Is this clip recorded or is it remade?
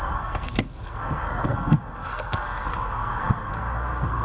remade